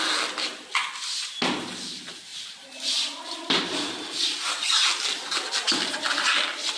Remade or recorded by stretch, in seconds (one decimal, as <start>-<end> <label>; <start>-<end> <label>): 0.0-6.8 recorded